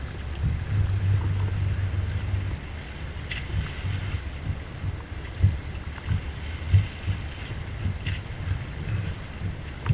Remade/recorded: recorded